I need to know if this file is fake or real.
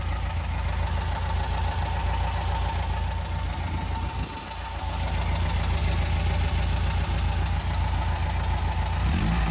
real